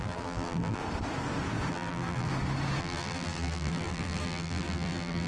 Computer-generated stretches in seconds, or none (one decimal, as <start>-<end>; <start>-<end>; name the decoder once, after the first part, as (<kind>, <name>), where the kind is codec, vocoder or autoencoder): 0.0-0.8 (vocoder, BigVGAN v2); 1.7-2.3; 2.8-5.3